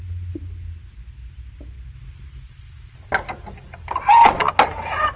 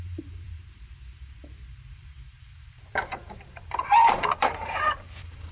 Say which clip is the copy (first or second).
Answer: second